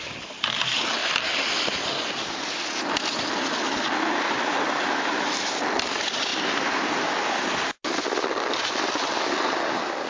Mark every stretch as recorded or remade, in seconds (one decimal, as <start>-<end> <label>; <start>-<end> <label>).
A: 0.0-10.1 recorded